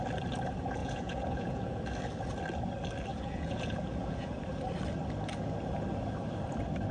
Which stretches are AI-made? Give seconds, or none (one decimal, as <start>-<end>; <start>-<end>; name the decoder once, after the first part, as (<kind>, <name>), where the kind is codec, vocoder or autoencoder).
0.8-1.8 (vocoder, Vocos); 3.1-4.3